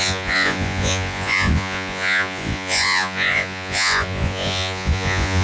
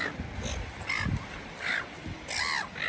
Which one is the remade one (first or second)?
first